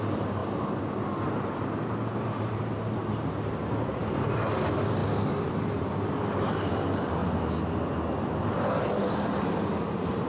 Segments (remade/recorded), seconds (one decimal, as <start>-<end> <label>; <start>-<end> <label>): 0.0-0.4 remade; 0.4-2.2 recorded; 2.2-5.0 remade; 5.0-5.5 recorded; 5.5-7.2 remade; 7.2-8.8 recorded; 8.8-10.3 remade